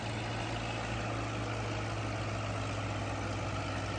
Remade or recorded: recorded